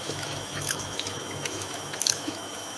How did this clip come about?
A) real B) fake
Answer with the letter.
B